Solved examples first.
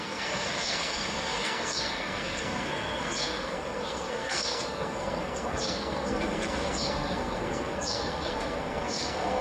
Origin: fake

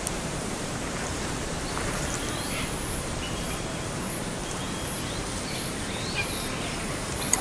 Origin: fake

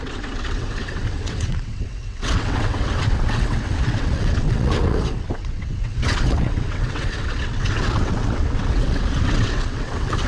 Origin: fake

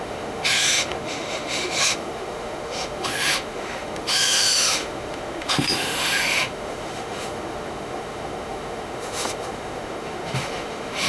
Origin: fake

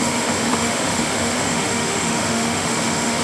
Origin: fake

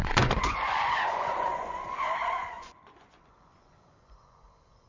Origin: fake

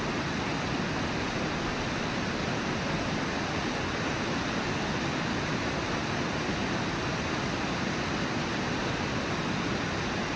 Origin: real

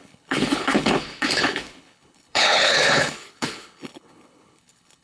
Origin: fake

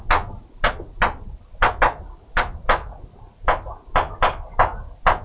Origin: real